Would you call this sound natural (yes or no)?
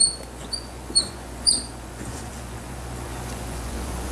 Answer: no